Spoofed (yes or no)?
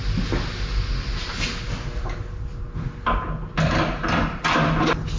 no